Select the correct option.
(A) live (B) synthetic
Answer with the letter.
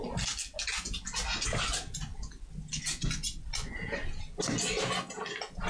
A